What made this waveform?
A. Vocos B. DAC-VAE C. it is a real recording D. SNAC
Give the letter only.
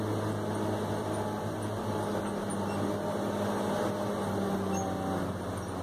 C